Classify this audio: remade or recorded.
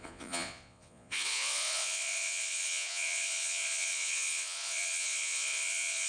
remade